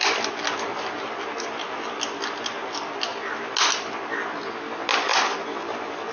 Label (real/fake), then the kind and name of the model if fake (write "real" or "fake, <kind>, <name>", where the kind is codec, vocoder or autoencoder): real